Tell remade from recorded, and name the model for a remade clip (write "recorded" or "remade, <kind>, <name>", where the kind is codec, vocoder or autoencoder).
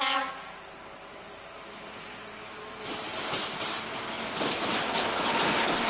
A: recorded